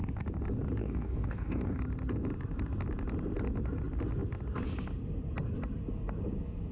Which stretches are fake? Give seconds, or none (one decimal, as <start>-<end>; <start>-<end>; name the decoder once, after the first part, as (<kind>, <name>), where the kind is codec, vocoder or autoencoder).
0.8-1.8 (codec, DAC)